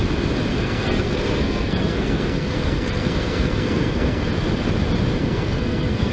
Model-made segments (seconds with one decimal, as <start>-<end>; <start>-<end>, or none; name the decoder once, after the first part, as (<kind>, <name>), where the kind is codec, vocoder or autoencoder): 0.5-4.2 (codec, SNAC); 5.2-6.1